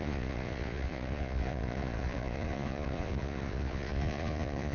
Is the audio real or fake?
fake